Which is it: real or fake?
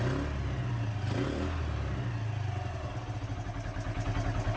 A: real